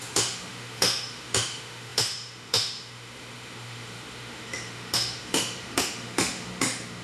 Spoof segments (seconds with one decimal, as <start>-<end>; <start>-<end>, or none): 0.0-7.0